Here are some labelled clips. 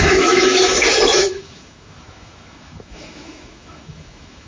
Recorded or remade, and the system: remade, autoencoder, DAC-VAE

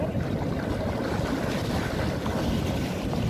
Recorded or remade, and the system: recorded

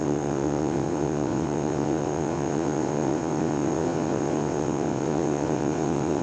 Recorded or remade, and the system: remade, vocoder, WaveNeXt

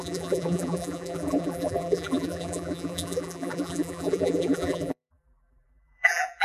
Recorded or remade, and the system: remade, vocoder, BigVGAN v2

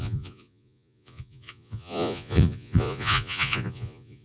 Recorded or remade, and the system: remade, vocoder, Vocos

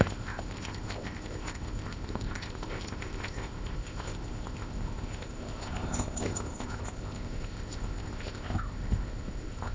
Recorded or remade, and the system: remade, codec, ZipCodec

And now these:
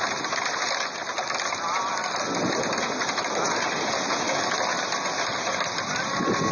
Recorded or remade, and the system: recorded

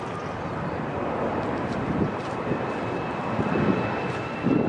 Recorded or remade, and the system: remade, vocoder, BigVGAN v2